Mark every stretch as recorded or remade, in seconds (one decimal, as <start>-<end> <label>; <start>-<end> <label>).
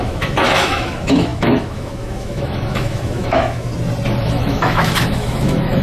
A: 0.0-3.7 remade; 3.7-4.2 recorded; 4.2-5.8 remade